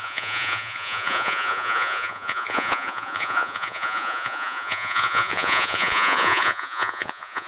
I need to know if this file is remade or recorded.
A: remade